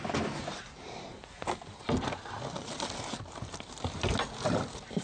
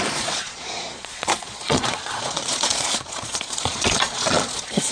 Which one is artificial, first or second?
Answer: second